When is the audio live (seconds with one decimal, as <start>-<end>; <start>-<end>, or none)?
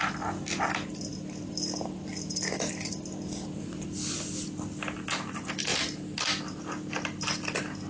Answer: 0.0-7.9